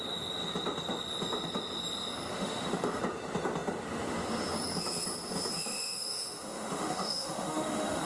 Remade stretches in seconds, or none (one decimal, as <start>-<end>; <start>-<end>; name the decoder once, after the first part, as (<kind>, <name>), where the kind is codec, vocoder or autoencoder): 2.3-3.0 (autoencoder, DAC-VAE); 5.5-8.1